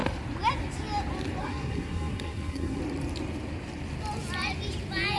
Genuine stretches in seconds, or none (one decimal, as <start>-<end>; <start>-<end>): 0.0-1.4; 2.8-5.2